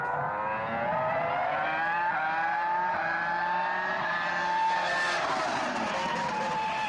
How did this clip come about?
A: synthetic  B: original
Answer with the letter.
B